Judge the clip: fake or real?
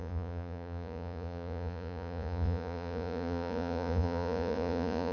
fake